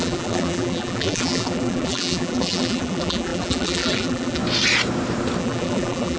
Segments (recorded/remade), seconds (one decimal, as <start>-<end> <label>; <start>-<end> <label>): 0.0-4.4 remade; 4.4-5.4 recorded; 5.4-6.2 remade